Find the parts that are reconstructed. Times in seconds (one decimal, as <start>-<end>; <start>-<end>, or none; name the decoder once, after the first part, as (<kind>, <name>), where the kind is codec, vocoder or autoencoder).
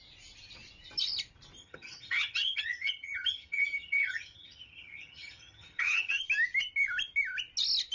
1.6-6.2 (vocoder, HiFi-GAN)